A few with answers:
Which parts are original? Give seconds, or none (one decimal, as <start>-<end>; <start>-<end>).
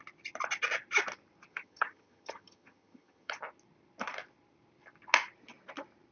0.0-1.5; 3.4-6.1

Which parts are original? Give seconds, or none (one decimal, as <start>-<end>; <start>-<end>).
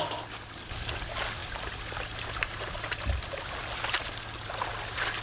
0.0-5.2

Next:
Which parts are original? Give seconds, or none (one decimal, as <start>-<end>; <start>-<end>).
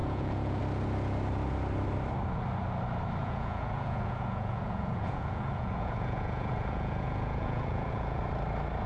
0.6-3.2; 8.2-8.9